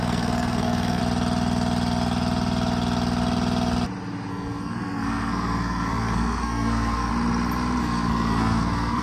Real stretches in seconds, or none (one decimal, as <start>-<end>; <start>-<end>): 1.0-4.3; 7.1-7.8